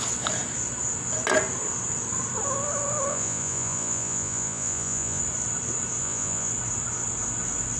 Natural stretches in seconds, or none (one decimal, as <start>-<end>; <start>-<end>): 0.0-3.1; 5.2-6.0; 6.5-7.8